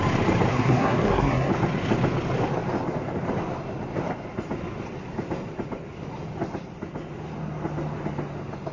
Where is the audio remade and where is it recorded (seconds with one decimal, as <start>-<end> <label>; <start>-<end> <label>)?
0.0-0.5 recorded; 0.5-1.5 remade; 1.5-8.7 recorded